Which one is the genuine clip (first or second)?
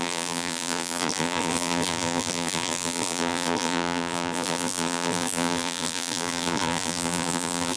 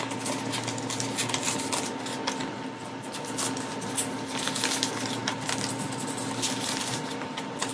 second